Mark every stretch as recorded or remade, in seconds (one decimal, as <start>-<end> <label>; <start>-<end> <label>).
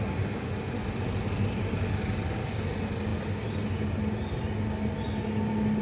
0.0-5.8 recorded